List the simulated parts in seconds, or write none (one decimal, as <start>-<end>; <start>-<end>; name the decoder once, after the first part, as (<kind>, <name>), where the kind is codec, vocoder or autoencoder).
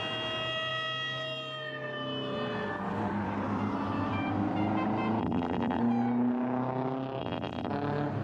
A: 5.2-5.8 (vocoder, BigVGAN v2); 7.2-7.7